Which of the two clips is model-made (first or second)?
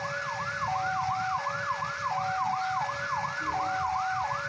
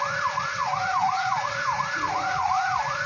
second